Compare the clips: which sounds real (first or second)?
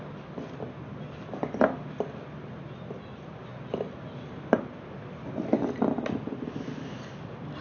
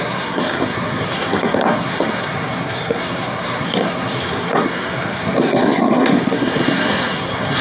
first